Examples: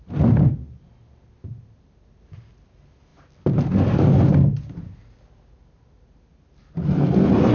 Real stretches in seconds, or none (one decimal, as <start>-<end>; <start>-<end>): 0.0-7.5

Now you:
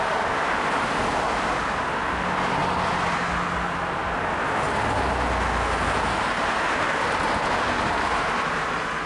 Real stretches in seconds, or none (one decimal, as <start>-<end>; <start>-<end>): 0.0-9.1

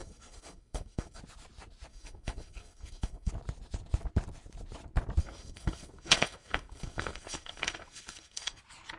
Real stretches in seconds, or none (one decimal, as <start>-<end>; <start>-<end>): 1.2-1.9; 3.3-5.2; 8.6-9.0